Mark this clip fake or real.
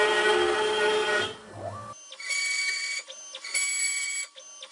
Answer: real